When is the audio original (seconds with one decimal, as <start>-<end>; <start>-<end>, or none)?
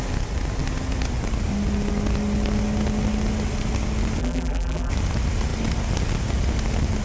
0.0-4.2; 4.9-7.0